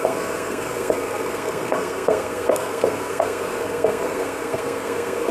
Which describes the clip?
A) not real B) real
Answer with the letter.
A